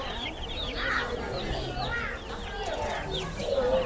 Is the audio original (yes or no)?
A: yes